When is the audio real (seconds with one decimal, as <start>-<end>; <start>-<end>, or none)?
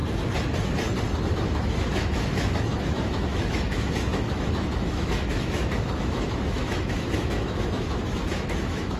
0.0-1.3